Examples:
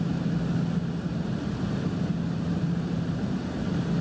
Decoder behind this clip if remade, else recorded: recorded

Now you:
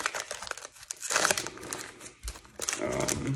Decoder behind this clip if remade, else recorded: recorded